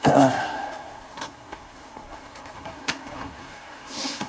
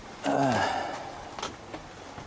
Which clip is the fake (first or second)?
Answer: first